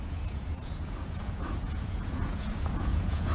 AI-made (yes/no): yes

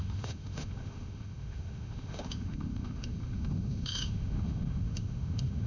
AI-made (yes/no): yes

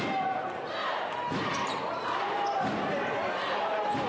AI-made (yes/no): no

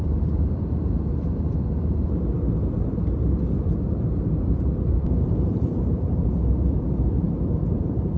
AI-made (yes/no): yes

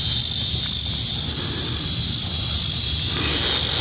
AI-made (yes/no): no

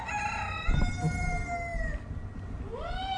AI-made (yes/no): no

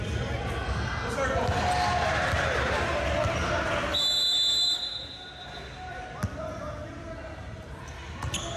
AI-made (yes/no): no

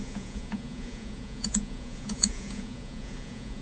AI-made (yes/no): yes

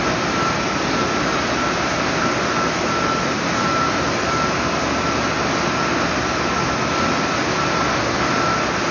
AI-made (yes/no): no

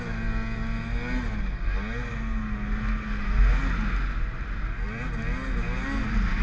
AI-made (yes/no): no